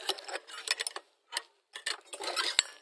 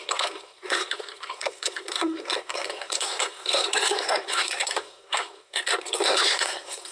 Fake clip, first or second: second